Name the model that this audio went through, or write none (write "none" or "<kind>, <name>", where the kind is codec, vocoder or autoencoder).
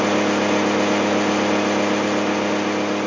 none